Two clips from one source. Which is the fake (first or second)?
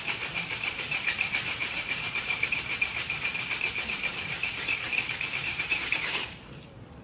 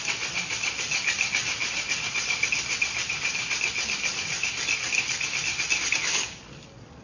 first